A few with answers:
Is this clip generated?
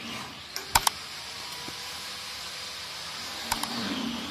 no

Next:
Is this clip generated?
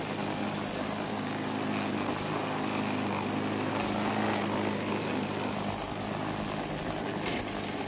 no